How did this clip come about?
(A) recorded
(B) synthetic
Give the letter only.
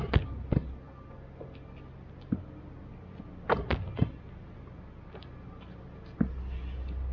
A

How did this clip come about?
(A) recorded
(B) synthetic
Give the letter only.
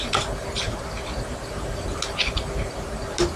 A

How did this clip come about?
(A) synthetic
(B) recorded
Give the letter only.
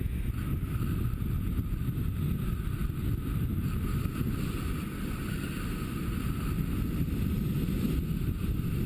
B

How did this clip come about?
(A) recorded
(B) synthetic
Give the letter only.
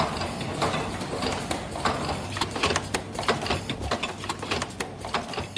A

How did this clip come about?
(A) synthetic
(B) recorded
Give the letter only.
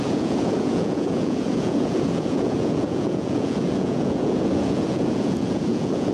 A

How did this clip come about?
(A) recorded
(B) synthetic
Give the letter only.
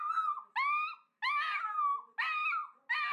A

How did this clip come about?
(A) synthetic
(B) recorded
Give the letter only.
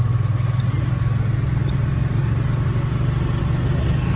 B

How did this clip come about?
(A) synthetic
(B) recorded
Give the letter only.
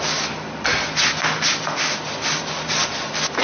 B